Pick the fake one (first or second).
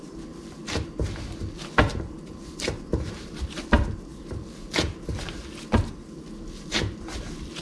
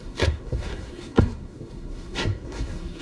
second